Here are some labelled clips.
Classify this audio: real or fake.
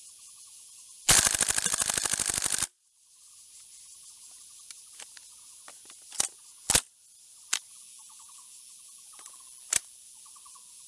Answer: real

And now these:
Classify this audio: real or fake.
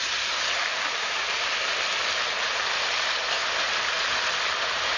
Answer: real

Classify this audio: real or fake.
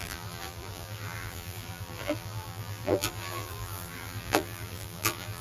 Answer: fake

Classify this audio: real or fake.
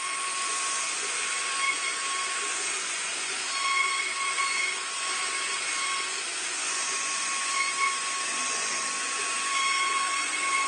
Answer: fake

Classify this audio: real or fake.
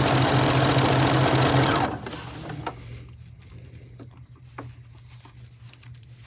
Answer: real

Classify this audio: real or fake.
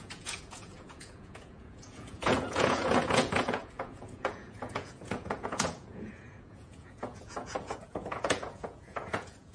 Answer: fake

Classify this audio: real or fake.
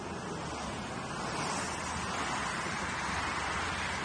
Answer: real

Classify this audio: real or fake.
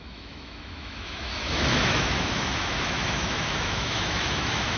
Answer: fake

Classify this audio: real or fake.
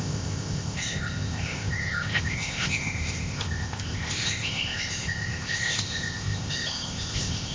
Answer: fake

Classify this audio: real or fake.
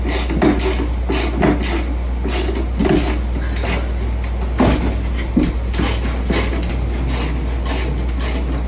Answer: real